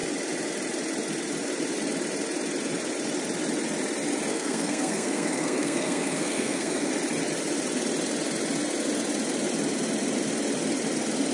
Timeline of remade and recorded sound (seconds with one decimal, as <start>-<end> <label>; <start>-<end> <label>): 0.0-4.3 recorded; 4.3-6.9 remade; 6.9-11.3 recorded